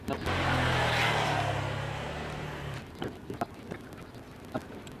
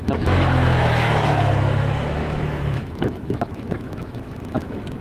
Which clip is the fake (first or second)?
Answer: second